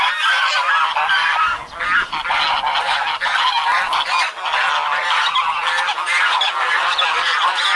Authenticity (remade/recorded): recorded